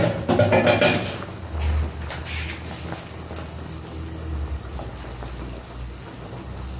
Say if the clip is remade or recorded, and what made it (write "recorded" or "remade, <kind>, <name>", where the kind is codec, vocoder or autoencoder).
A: recorded